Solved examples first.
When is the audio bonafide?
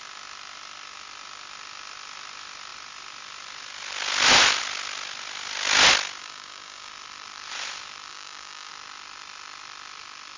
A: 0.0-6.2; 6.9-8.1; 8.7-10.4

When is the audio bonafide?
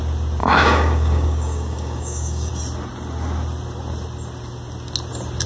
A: 0.0-0.4; 2.5-5.5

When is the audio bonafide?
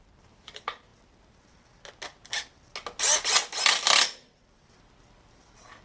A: 0.9-4.4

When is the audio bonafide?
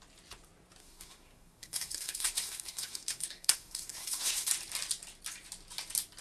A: 0.0-0.8; 4.5-6.2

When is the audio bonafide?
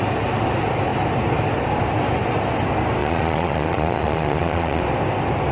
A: 0.0-3.0; 4.8-5.5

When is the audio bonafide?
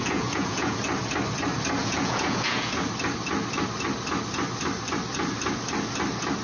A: 0.8-1.8; 2.7-6.4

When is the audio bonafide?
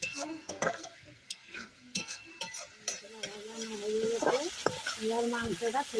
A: 2.3-6.0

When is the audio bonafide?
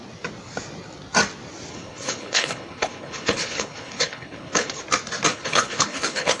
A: 0.0-1.7; 4.8-5.3